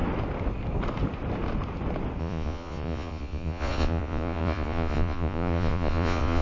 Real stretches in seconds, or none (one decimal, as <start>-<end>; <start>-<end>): 0.0-2.2